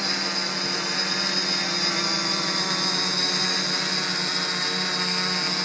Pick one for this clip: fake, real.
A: real